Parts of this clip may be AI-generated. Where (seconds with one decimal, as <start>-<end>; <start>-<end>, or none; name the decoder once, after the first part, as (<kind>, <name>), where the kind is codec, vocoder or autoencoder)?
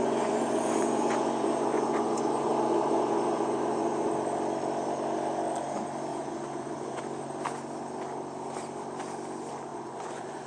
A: 0.0-4.1 (vocoder, Vocos); 6.1-7.0; 9.7-10.5